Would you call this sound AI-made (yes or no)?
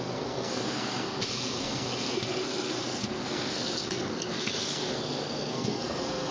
yes